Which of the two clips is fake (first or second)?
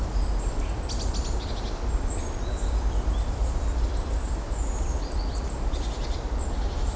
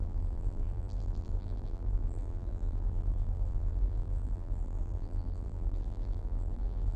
second